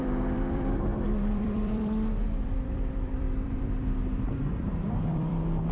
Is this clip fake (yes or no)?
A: yes